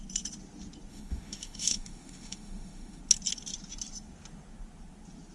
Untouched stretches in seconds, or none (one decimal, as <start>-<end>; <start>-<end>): 0.0-0.9; 3.0-5.3